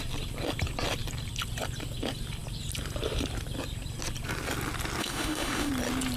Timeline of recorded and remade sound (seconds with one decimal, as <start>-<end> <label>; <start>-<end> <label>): 0.0-5.0 recorded; 5.0-5.7 remade; 5.7-6.2 recorded